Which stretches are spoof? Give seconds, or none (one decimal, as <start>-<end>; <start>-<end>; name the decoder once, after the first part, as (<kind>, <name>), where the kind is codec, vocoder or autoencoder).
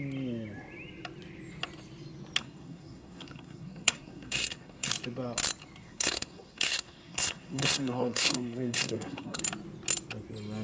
2.4-4.9 (codec, SNAC); 5.8-9.4